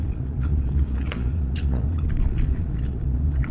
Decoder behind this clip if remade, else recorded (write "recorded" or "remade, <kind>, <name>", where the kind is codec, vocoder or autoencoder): remade, vocoder, Vocos